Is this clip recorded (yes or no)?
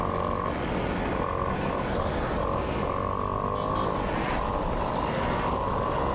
yes